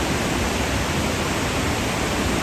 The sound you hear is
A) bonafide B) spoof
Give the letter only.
B